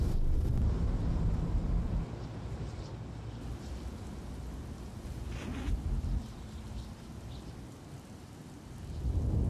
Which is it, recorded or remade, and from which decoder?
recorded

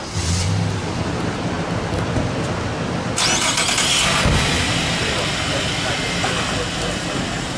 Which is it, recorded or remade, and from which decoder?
recorded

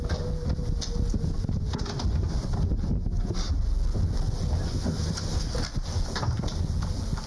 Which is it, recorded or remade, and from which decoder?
recorded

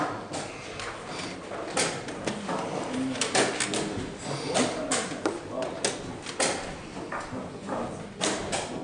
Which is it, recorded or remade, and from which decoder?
recorded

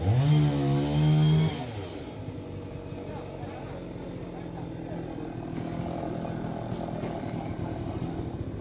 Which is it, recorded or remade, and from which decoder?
recorded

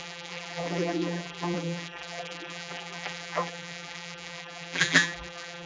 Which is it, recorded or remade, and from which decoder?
remade, vocoder, BigVGAN v2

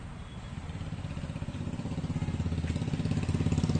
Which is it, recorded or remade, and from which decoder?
recorded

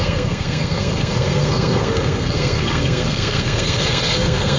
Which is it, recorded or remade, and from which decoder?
remade, codec, SNAC